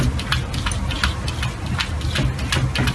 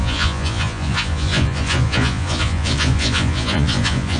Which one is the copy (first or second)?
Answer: second